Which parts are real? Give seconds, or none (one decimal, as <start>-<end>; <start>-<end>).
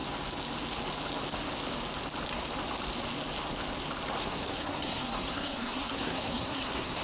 0.0-4.2